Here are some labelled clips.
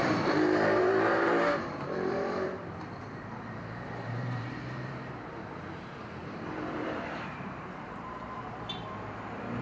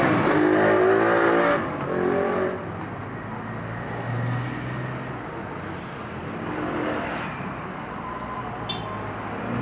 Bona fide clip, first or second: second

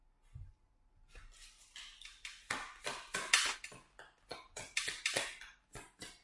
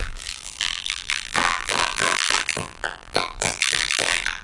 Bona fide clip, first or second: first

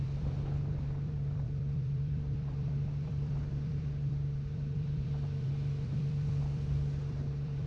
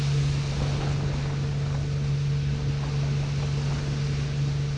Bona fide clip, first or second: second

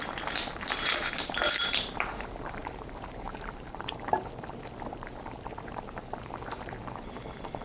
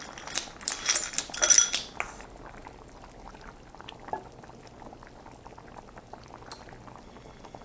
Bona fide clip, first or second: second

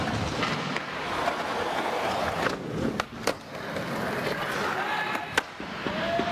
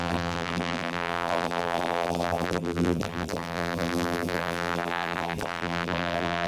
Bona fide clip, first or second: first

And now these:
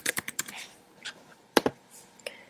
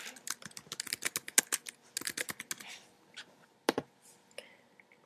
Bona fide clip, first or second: second